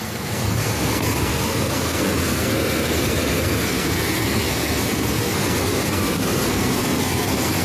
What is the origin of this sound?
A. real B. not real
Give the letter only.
B